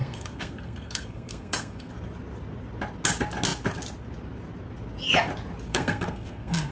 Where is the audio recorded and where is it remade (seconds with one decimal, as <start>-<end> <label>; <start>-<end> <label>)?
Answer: 0.0-1.9 remade; 1.9-5.7 recorded; 5.7-6.7 remade